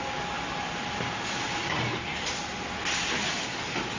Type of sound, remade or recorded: recorded